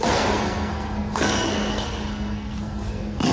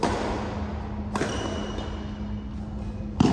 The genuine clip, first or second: second